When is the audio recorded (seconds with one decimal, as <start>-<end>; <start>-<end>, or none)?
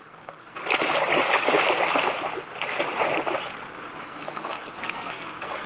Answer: 0.6-4.0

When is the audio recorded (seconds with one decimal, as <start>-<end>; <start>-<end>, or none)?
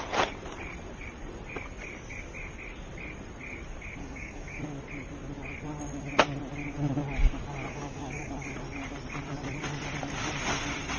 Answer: 0.0-4.0; 4.6-7.7; 8.3-11.0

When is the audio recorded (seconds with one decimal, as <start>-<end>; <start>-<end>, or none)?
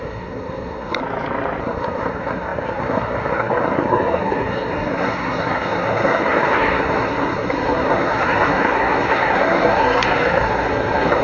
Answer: 1.0-1.6